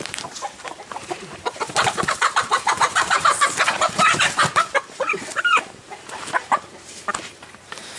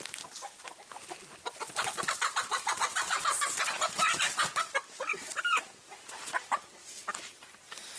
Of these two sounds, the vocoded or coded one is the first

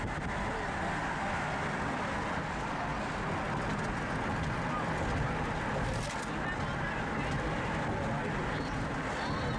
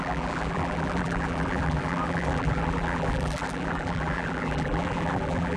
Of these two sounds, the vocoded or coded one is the second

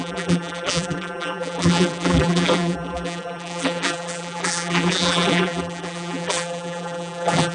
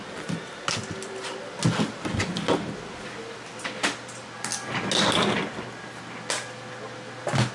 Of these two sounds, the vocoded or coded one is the first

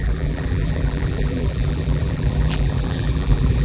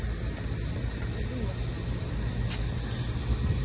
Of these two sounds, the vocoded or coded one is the first